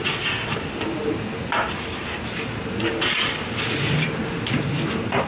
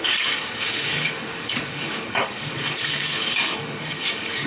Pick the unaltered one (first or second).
first